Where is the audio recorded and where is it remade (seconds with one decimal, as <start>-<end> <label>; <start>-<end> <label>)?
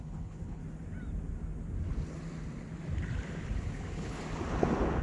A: 0.0-0.6 remade; 0.6-3.6 recorded; 3.6-4.2 remade; 4.2-5.0 recorded